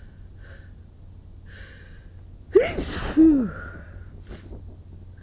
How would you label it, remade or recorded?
recorded